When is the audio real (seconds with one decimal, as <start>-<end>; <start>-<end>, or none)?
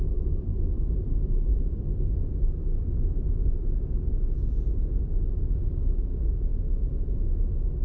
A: 0.0-7.8